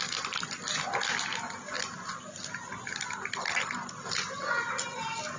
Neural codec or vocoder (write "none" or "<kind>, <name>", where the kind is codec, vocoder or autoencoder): none